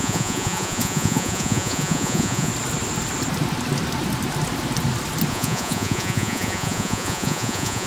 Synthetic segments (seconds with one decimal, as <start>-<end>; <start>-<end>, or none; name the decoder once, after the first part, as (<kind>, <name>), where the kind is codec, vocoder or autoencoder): 0.0-2.5 (vocoder, Vocos); 5.3-7.9